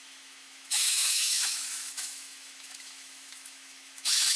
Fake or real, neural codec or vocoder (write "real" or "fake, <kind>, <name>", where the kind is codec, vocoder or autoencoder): fake, autoencoder, DAC-VAE